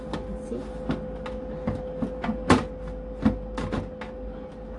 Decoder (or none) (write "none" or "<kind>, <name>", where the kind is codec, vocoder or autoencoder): none